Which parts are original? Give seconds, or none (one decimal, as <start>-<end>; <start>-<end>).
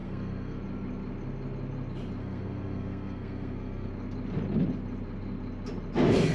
0.6-2.2; 3.9-6.3